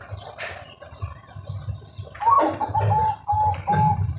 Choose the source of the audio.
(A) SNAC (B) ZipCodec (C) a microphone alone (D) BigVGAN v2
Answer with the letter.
C